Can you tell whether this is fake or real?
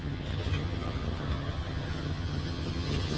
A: fake